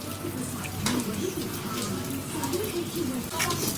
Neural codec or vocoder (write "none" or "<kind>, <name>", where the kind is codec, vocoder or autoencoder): none